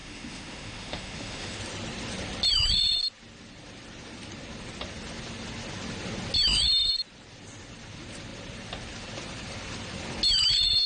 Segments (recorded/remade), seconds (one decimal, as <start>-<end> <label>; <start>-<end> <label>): 0.0-1.6 remade; 1.6-10.9 recorded

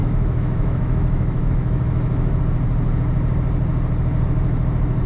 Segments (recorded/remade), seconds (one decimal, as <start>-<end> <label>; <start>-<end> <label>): 0.0-2.4 remade; 2.4-5.1 recorded